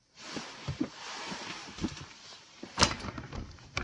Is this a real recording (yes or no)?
no